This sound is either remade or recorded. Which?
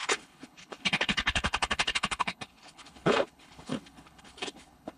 remade